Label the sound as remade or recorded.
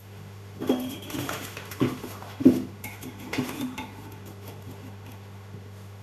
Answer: remade